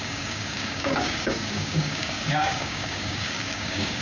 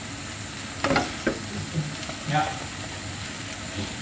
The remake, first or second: first